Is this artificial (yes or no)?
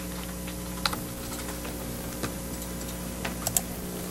no